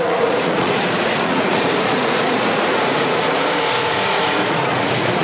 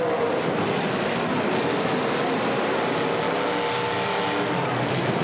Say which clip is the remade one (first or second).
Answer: first